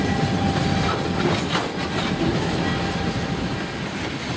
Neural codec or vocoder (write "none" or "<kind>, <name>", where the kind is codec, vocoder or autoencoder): none